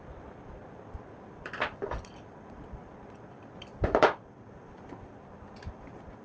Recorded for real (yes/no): no